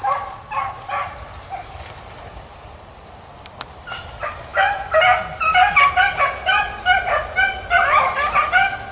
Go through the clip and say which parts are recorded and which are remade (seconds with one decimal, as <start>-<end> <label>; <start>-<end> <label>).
0.0-8.9 recorded